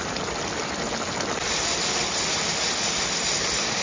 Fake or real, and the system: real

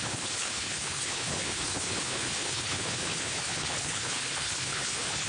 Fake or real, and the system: fake, codec, HILCodec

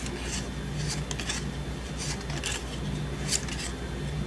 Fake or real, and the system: real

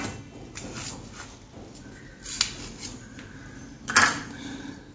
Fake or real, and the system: real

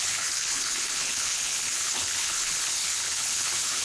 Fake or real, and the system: fake, codec, HILCodec